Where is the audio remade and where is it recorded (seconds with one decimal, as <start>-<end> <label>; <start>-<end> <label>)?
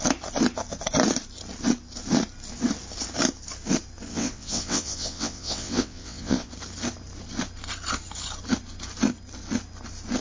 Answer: 0.0-4.1 recorded; 4.1-6.5 remade; 6.5-10.2 recorded